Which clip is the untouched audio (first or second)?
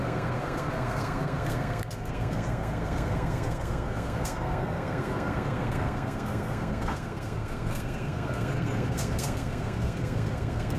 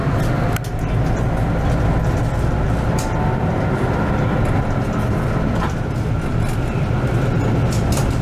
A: second